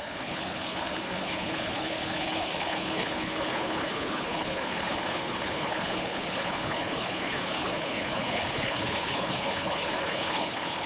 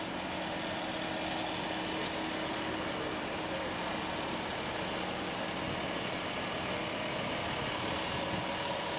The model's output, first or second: first